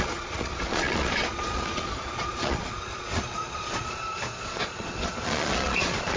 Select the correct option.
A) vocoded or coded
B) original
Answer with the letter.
A